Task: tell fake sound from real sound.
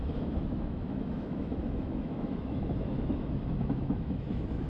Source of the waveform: fake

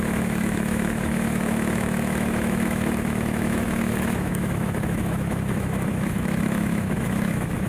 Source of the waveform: fake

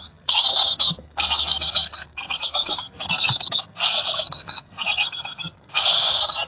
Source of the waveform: fake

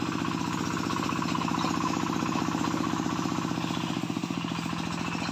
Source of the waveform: real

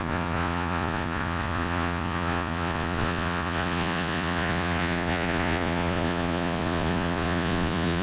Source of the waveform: fake